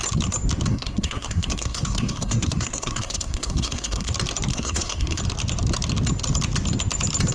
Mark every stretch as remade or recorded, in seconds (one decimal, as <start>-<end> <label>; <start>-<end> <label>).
0.0-0.7 recorded; 0.7-4.1 remade; 4.1-4.5 recorded; 4.5-5.2 remade; 5.2-7.3 recorded